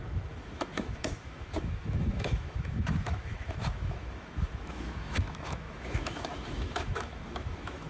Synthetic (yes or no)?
yes